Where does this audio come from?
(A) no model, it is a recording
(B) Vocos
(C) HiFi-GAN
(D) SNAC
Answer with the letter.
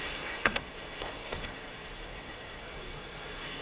D